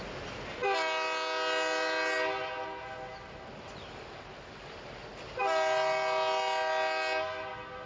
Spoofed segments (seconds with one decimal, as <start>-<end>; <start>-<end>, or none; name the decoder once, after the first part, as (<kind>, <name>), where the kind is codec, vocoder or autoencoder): none